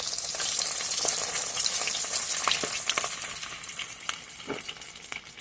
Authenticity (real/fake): real